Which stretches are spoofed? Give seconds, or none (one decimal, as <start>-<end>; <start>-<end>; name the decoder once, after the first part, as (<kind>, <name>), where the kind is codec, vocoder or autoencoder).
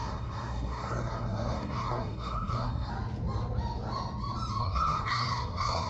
0.0-2.9 (codec, SNAC); 4.6-5.9